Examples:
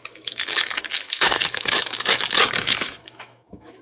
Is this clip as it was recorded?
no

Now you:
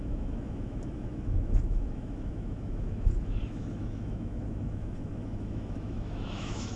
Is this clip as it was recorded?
no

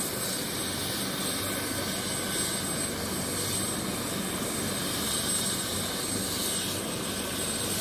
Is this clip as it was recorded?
yes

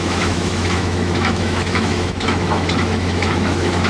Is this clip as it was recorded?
no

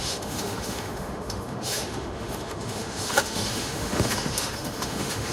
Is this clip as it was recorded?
no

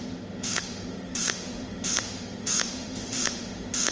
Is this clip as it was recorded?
no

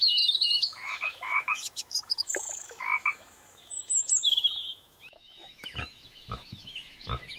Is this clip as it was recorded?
no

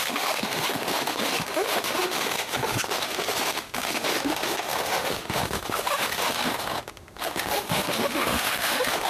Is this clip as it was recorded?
no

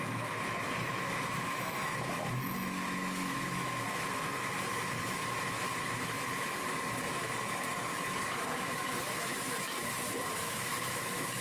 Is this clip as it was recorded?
no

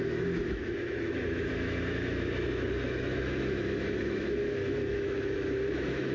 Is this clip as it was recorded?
no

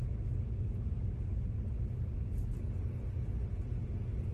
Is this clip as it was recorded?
yes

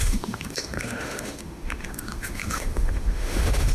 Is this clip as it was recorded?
no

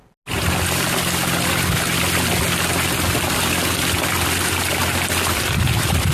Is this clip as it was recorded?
yes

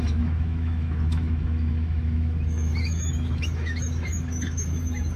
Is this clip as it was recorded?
no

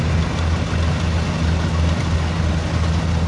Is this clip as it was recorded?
yes